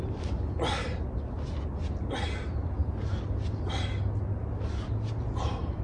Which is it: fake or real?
real